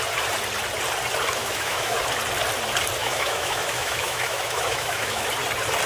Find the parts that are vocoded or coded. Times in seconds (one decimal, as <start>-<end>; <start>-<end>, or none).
1.4-2.0; 3.0-5.3